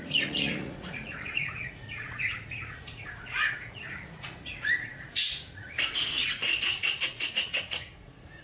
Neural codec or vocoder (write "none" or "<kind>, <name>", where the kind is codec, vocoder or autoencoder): vocoder, Vocos